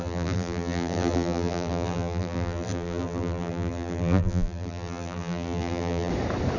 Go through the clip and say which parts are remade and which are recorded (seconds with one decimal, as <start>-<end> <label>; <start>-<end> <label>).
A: 0.0-6.1 remade; 6.1-6.6 recorded